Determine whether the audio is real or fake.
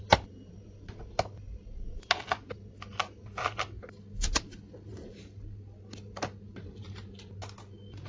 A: real